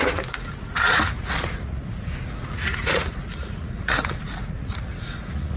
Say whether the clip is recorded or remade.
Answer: remade